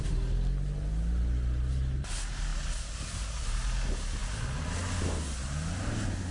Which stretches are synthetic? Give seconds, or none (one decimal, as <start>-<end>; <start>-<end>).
none